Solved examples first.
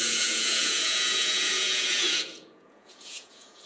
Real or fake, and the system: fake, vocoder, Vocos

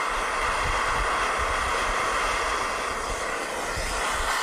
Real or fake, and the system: real